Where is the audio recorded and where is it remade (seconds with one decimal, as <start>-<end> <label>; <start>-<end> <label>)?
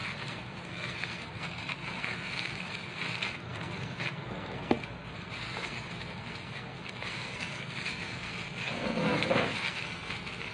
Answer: 0.0-10.5 remade